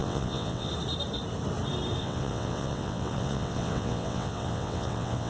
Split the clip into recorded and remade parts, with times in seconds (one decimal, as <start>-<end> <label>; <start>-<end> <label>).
0.0-0.7 remade; 0.7-2.0 recorded; 2.0-5.3 remade